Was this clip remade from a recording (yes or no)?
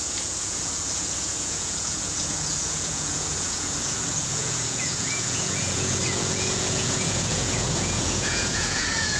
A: yes